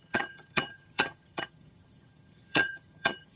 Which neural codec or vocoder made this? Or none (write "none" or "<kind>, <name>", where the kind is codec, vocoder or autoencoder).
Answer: vocoder, HiFi-GAN